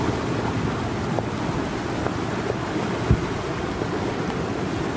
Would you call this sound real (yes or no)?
yes